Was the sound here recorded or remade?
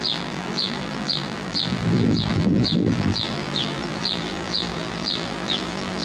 remade